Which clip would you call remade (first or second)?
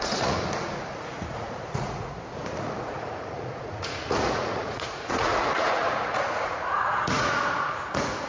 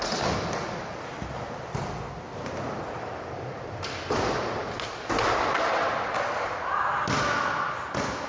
first